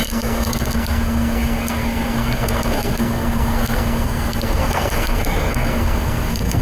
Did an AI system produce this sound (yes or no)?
yes